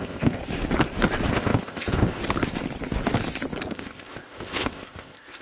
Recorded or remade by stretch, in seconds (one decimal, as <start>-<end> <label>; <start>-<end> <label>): 0.0-0.4 remade; 0.4-1.3 recorded; 1.3-2.2 remade; 2.2-3.7 recorded; 3.7-5.4 remade